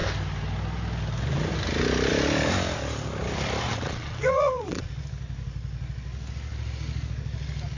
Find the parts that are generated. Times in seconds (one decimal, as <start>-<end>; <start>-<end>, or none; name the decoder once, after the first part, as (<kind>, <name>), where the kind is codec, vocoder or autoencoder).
3.7-4.9 (vocoder, WaveNeXt)